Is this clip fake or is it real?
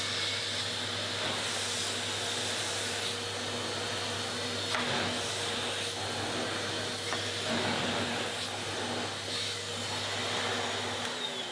real